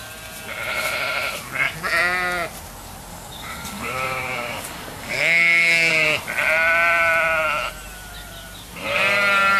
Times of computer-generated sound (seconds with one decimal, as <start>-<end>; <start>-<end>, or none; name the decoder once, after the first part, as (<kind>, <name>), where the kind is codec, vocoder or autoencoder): 3.1-5.9 (codec, DAC)

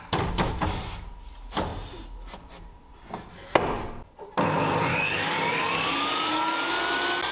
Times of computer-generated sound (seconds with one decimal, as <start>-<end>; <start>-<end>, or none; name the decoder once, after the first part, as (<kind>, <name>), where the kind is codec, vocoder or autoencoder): 4.9-6.7 (codec, DAC)

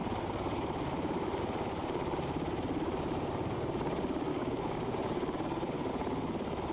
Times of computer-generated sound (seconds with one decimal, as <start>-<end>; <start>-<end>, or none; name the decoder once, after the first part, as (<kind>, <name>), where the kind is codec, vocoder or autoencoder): 4.3-5.9 (codec, DAC)

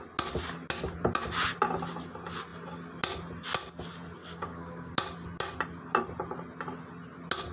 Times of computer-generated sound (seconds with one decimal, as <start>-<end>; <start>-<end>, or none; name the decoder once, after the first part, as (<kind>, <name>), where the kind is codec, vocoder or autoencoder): 4.2-4.9 (codec, DAC)